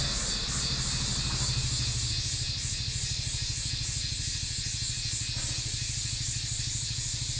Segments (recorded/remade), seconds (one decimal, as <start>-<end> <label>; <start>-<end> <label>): 0.0-7.4 recorded